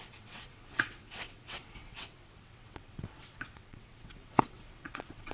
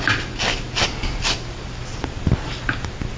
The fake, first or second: first